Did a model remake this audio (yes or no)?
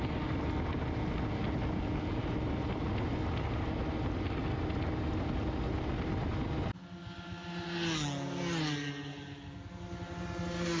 no